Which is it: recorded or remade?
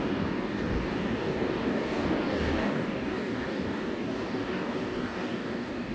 remade